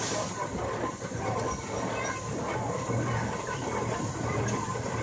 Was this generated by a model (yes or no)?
no